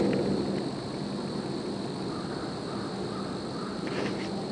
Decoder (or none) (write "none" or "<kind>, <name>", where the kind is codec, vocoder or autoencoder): none